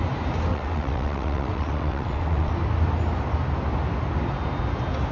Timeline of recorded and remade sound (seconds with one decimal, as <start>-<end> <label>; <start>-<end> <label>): 0.0-0.5 recorded; 0.5-2.5 remade; 2.5-5.1 recorded

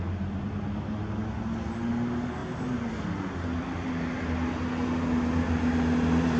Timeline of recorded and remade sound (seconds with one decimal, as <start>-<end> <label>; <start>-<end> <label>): 0.0-6.4 recorded

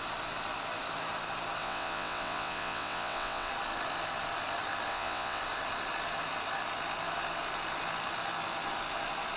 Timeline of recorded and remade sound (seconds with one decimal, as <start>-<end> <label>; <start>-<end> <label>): 0.0-1.6 recorded; 1.6-3.5 remade; 3.5-4.9 recorded; 4.9-5.4 remade; 5.4-9.4 recorded

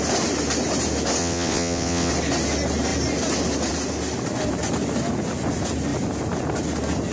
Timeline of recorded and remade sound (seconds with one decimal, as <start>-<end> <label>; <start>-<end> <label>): 0.0-1.2 recorded; 1.2-2.1 remade; 2.1-7.1 recorded

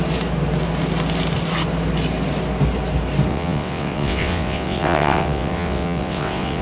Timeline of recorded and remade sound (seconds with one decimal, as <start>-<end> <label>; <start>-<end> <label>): 0.0-3.3 recorded; 3.3-6.6 remade

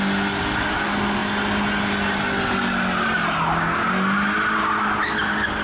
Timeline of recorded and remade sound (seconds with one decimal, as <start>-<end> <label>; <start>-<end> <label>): 0.0-5.6 recorded

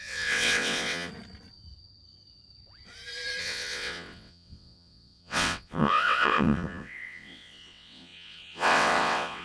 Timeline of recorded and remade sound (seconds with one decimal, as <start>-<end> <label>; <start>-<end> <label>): 0.0-1.1 remade; 1.1-3.4 recorded; 3.4-9.4 remade